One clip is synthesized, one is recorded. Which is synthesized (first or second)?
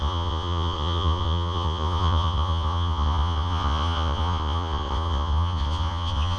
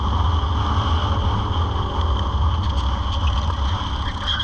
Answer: first